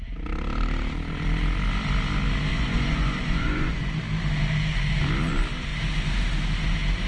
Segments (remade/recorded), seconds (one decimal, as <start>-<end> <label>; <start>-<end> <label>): 0.0-2.5 recorded; 2.5-3.9 remade; 3.9-7.1 recorded